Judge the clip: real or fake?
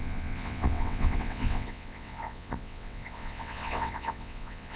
fake